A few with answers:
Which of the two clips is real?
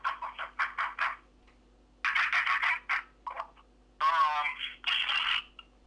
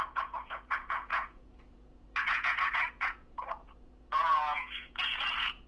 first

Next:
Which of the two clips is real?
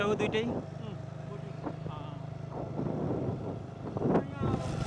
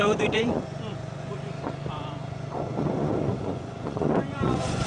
first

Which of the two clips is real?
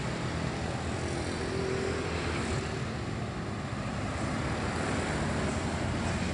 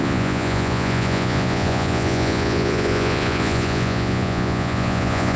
first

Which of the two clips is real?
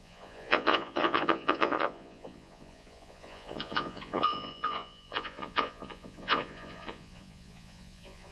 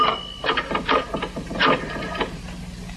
second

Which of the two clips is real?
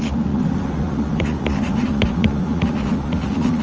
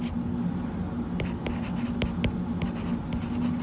second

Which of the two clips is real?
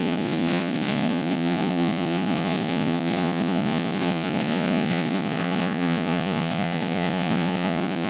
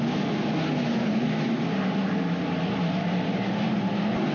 second